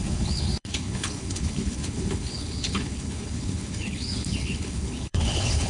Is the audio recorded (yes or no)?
no